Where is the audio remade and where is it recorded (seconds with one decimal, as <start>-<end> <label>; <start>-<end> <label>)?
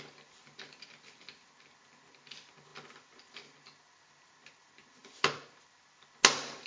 0.0-6.7 recorded